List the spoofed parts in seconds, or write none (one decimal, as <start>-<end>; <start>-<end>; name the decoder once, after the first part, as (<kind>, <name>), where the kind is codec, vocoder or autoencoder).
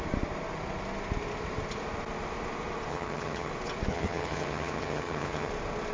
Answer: 2.9-3.5 (vocoder, HiFi-GAN); 3.9-5.5